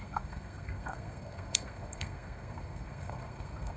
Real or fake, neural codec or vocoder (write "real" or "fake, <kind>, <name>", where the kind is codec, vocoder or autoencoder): fake, codec, SNAC